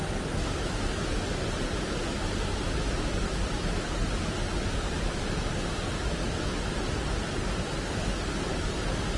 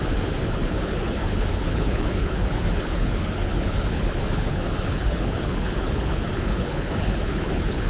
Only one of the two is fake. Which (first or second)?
second